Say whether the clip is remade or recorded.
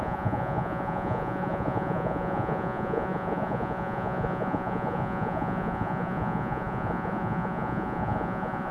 remade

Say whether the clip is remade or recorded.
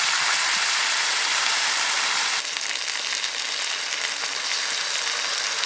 recorded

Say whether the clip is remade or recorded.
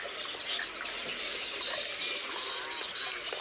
recorded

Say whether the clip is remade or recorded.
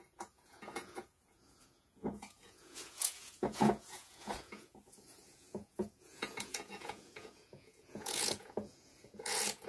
remade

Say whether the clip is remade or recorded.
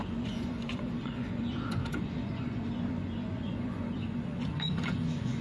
remade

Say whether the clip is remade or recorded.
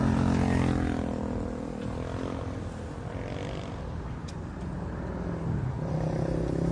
recorded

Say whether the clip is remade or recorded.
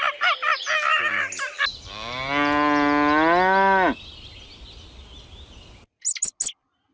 recorded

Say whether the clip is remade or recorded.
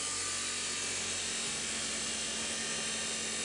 recorded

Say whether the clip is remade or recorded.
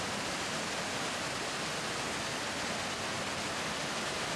recorded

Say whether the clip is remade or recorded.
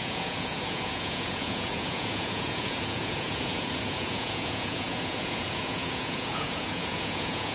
remade